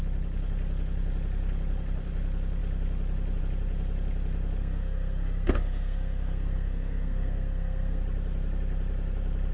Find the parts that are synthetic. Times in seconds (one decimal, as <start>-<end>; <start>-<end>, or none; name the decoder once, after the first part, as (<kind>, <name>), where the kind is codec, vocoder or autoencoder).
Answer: 4.6-8.0 (codec, SNAC)